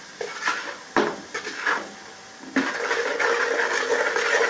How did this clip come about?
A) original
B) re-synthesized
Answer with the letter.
A